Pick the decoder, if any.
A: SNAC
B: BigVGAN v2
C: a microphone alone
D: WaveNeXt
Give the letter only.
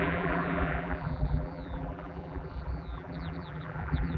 B